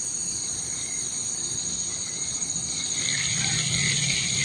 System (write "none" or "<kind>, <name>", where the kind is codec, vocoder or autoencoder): none